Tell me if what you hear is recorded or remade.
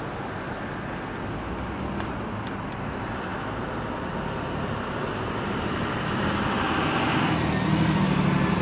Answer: recorded